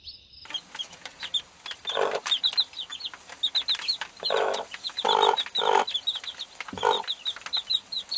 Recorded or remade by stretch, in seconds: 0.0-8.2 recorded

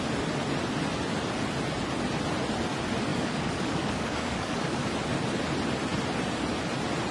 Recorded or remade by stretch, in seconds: 0.0-3.1 recorded; 3.1-4.9 remade; 4.9-7.1 recorded